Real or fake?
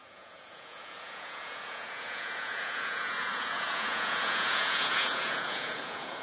fake